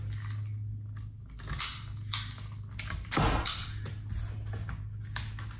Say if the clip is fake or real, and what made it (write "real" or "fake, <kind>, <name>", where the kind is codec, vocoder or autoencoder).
real